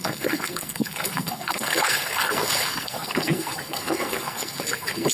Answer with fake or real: fake